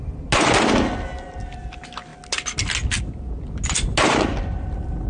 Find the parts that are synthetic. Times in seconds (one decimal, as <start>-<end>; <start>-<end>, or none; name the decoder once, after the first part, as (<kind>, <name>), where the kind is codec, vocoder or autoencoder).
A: none